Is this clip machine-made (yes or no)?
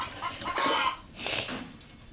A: no